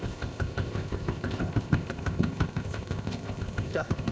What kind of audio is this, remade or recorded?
remade